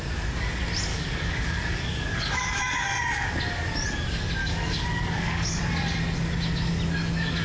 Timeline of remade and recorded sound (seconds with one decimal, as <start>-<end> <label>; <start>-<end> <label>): 0.0-0.9 recorded; 0.9-2.6 remade; 2.6-4.4 recorded; 4.4-5.6 remade; 5.6-7.4 recorded